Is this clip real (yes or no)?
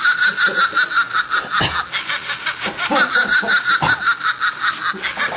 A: yes